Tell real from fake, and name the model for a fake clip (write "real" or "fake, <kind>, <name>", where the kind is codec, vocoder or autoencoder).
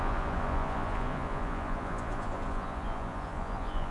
fake, vocoder, Vocos